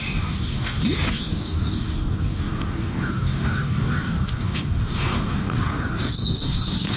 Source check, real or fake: fake